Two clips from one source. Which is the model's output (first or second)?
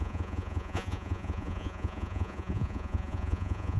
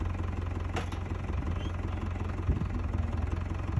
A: first